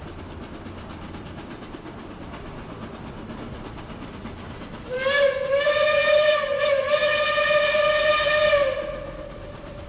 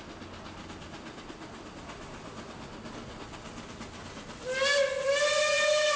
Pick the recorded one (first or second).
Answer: second